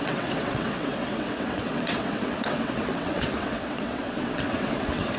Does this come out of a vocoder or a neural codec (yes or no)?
yes